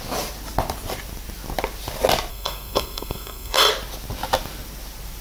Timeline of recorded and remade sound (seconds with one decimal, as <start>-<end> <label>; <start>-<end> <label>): 0.0-2.3 recorded; 2.3-3.7 remade; 3.7-5.2 recorded